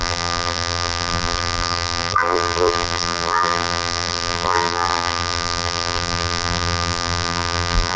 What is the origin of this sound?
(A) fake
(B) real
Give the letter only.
A